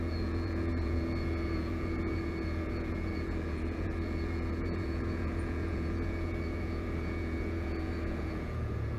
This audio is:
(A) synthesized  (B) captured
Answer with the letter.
A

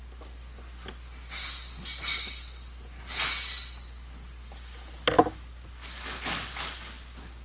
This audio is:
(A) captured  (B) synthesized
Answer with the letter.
A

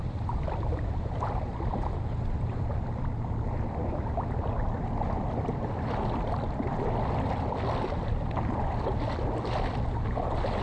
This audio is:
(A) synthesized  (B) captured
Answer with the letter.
B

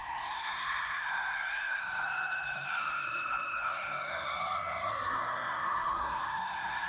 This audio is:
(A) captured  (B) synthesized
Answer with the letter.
B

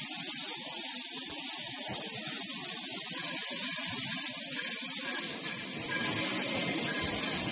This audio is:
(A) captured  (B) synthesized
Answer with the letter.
A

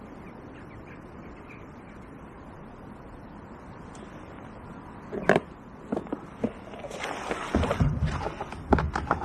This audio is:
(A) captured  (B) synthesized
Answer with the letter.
A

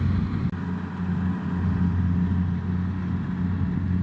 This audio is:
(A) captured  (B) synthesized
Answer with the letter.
A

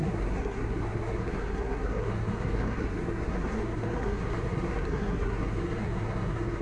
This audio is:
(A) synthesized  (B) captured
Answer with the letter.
A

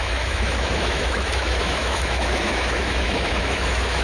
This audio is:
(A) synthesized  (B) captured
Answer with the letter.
A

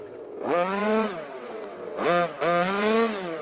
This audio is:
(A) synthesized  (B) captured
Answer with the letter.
A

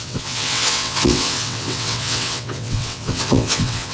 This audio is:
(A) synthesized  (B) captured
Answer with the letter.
A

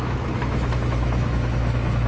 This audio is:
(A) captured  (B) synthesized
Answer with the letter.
B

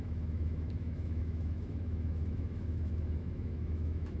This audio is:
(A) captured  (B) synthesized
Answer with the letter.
B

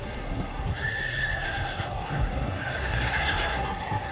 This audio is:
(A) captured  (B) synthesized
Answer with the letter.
B